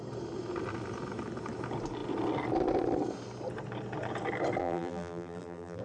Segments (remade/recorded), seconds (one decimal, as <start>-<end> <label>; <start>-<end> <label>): 0.0-4.6 recorded; 4.6-5.8 remade